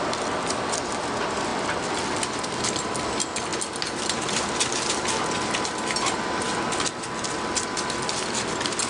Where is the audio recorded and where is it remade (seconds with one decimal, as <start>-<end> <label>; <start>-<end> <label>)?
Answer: 0.0-8.9 recorded